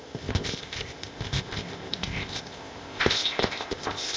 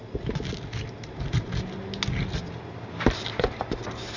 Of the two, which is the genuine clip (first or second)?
second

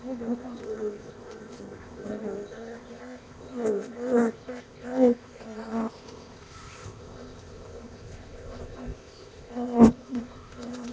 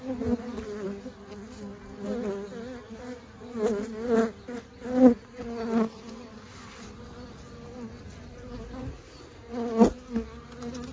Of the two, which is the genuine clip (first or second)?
second